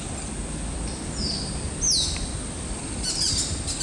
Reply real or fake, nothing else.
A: real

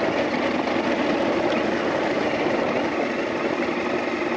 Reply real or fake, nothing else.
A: real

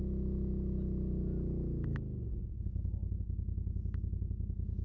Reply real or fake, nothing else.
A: real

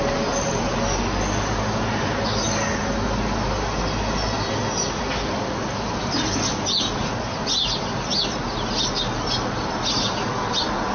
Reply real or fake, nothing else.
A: real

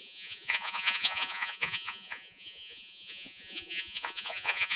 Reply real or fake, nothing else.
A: fake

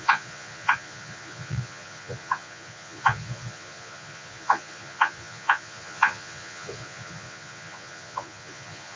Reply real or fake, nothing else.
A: fake